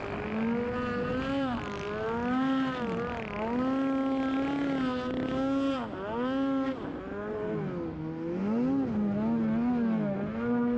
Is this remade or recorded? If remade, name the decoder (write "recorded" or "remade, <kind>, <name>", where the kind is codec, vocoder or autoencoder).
recorded